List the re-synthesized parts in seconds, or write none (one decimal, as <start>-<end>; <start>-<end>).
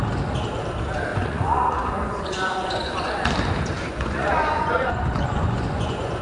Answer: 1.1-3.1; 3.9-6.2